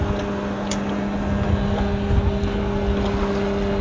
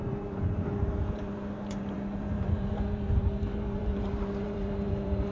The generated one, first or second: second